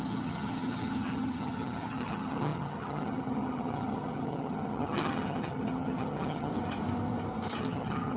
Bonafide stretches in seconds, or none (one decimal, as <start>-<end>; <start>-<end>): 6.5-7.6